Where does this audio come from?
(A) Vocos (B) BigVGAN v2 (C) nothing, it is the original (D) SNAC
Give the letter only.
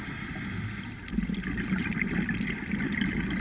C